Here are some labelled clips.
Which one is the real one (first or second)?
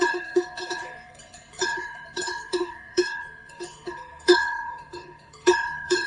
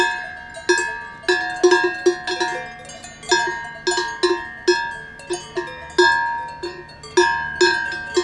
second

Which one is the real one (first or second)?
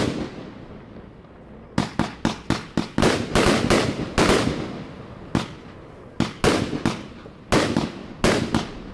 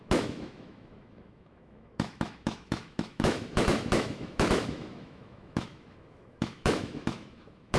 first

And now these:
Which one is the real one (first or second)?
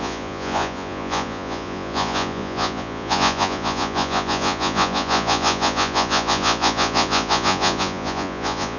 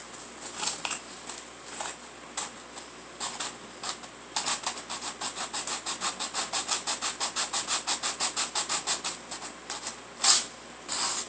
second